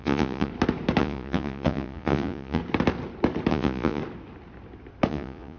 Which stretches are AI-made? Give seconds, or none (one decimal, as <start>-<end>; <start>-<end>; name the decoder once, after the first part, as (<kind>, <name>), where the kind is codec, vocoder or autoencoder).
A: 0.0-0.5 (vocoder, Vocos); 1.0-2.6; 3.5-4.0; 5.1-5.6